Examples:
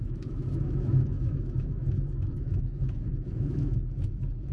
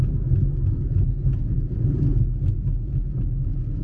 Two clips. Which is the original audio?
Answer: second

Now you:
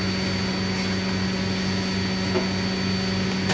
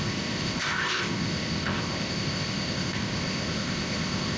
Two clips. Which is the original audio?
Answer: first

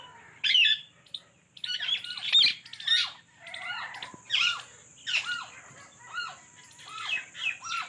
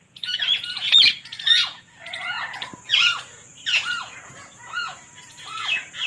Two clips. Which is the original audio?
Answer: first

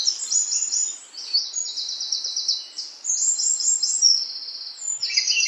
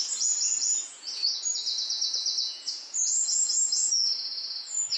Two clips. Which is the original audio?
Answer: first